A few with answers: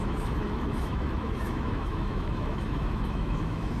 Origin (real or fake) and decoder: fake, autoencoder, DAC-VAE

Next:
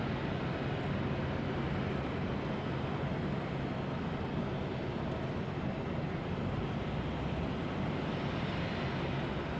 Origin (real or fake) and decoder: real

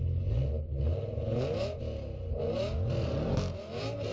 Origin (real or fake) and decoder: real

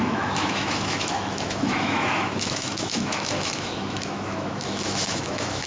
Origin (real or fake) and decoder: fake, autoencoder, DAC-VAE